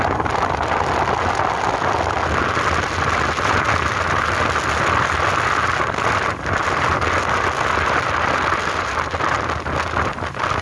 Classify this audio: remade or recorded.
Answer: recorded